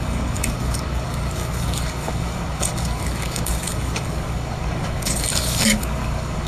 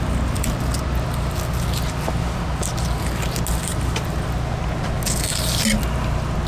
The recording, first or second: second